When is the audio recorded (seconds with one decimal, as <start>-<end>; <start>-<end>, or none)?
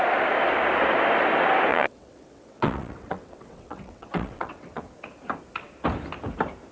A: 0.0-1.7; 4.8-6.7